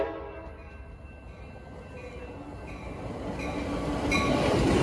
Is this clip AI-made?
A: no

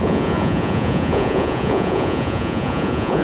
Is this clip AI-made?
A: yes